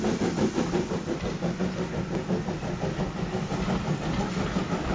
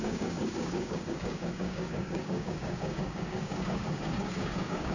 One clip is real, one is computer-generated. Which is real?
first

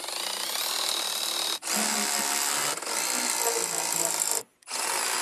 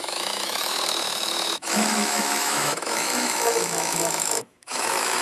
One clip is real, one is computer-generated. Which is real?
first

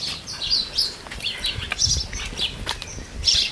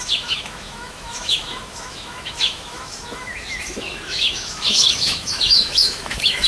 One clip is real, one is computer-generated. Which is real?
first